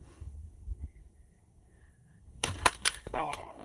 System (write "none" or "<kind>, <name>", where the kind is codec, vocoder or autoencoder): codec, SNAC